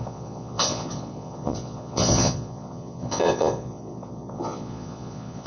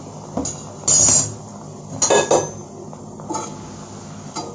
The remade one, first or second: first